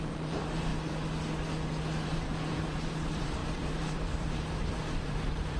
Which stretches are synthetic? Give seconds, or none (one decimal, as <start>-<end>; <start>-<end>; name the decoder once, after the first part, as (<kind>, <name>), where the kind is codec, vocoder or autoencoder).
0.0-0.7 (vocoder, BigVGAN v2); 2.1-5.6